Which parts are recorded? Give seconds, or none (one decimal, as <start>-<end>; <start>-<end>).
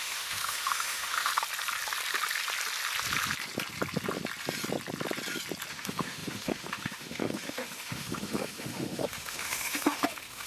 1.3-5.7